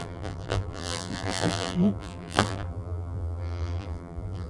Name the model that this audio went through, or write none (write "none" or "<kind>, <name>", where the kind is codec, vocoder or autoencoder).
vocoder, BigVGAN v2